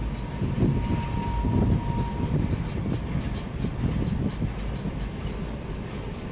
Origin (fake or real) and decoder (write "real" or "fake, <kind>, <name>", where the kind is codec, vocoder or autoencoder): real